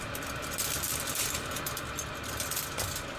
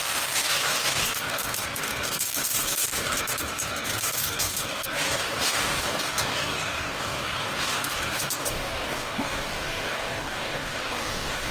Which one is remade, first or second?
second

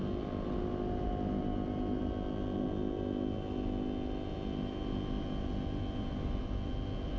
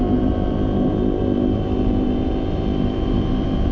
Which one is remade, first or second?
second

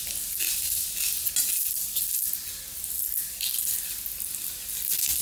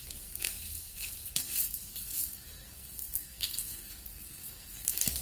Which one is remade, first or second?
second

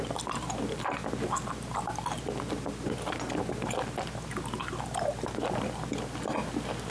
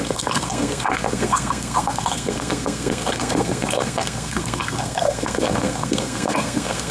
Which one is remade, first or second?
second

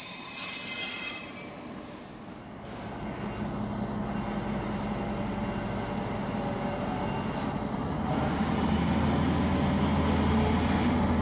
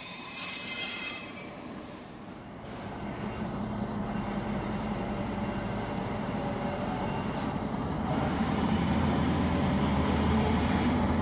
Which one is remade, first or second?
second